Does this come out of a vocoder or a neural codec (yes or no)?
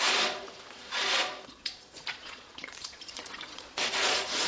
yes